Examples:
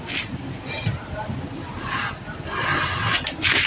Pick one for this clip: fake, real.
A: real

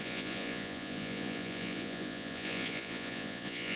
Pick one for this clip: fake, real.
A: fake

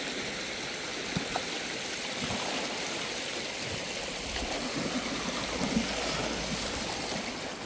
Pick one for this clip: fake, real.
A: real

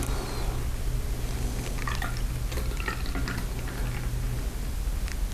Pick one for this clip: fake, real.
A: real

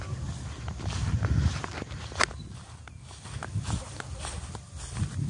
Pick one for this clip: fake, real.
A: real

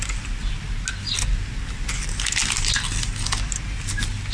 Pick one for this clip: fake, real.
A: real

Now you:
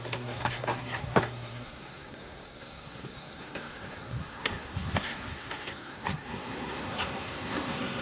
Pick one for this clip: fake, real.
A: fake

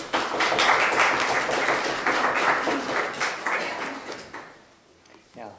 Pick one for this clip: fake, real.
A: real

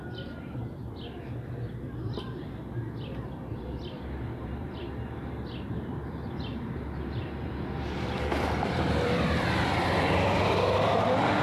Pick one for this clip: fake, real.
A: fake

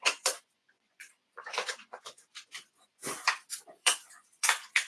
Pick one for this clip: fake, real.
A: fake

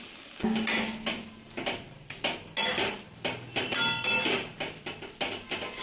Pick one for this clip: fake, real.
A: real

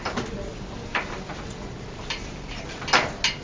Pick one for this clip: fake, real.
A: real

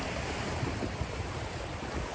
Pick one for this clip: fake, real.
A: real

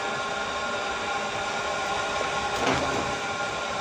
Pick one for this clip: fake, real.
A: real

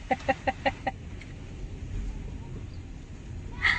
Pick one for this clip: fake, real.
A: real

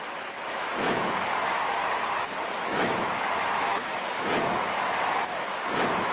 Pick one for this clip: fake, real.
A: fake